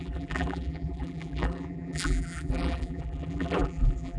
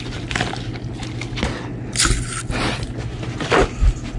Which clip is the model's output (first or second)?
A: first